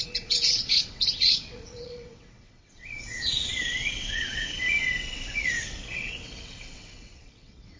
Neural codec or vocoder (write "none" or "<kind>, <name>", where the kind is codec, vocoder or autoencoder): vocoder, WaveNeXt